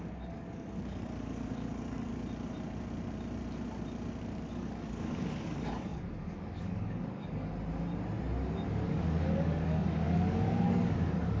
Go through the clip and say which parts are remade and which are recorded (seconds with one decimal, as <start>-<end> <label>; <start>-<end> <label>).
0.0-2.1 remade; 2.1-4.2 recorded; 4.2-7.5 remade; 7.5-8.7 recorded; 8.7-11.4 remade